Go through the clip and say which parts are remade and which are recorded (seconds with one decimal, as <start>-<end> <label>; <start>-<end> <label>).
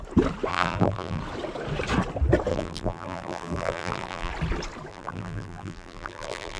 0.0-0.5 recorded; 0.5-1.2 remade; 1.2-2.5 recorded; 2.5-4.3 remade; 4.3-4.9 recorded; 4.9-6.6 remade